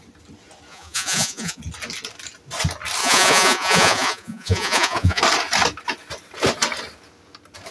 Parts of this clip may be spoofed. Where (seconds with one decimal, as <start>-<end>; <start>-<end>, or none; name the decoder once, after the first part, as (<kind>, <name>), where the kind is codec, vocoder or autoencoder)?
0.7-1.6 (vocoder, Vocos); 3.0-5.2